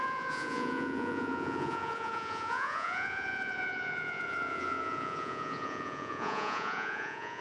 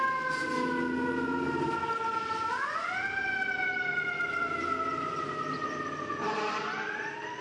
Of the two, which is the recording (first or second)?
second